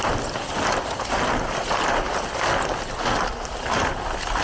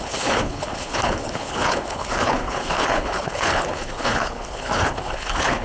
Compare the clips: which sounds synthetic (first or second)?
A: second